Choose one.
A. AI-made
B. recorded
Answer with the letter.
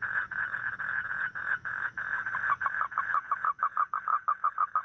A